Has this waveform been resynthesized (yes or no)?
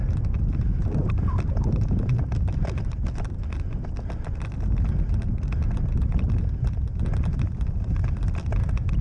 no